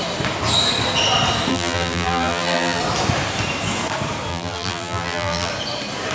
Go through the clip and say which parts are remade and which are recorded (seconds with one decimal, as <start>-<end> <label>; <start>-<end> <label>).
0.0-1.5 recorded; 1.5-2.8 remade; 2.8-4.3 recorded; 4.3-5.5 remade; 5.5-6.1 recorded